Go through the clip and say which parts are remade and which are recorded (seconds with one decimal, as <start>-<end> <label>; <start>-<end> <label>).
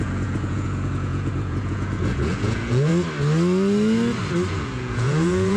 0.0-2.9 remade; 2.9-4.5 recorded; 4.5-5.6 remade